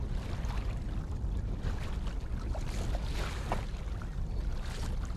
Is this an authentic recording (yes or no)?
yes